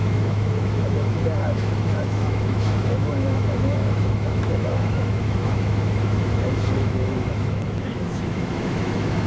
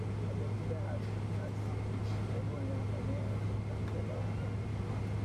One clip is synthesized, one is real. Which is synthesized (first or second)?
first